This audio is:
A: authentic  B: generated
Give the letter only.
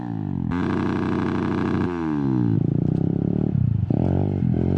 A